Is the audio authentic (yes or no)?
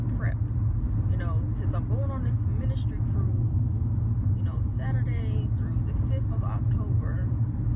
yes